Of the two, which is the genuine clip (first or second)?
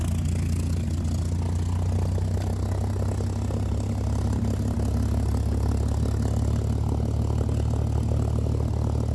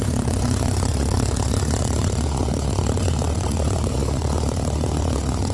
first